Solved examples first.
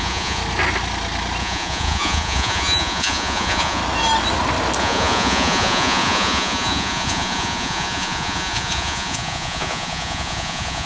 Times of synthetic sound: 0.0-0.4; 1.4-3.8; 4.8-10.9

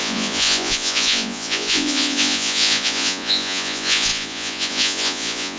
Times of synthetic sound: 0.0-5.6